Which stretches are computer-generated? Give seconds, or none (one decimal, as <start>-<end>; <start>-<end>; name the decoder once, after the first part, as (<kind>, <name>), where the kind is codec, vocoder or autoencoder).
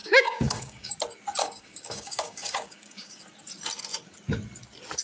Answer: 0.0-0.9 (codec, DAC); 1.4-3.2